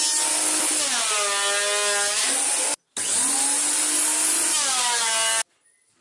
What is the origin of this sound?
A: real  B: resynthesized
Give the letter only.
A